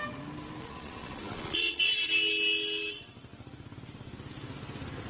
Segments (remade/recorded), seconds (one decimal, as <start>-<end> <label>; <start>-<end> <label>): 0.0-0.6 recorded; 0.6-1.9 remade; 1.9-5.1 recorded